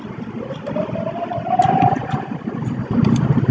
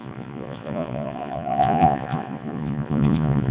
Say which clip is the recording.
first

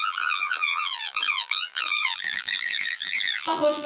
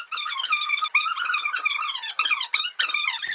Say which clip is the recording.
second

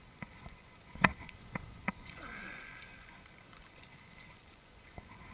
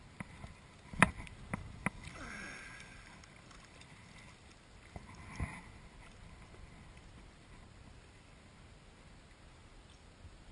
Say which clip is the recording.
second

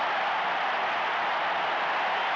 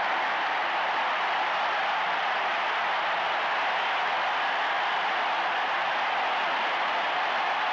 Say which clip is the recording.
first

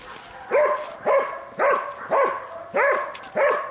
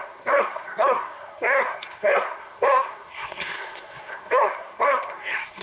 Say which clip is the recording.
first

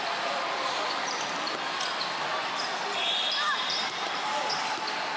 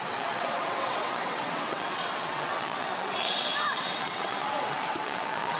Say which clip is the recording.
first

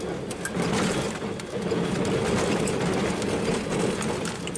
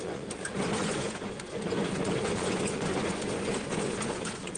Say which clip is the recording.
first